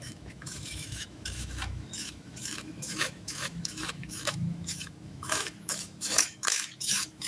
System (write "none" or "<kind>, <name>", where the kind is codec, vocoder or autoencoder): autoencoder, DAC-VAE